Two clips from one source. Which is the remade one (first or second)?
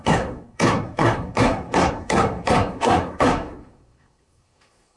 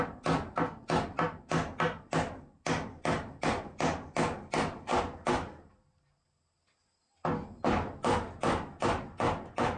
first